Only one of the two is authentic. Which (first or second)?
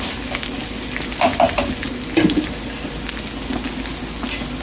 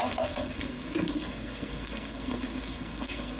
first